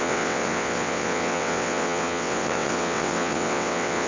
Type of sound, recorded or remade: remade